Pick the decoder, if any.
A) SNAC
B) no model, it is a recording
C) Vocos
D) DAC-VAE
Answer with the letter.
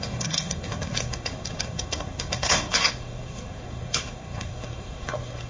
A